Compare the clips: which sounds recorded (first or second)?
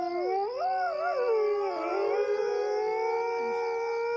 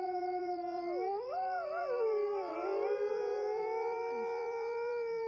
first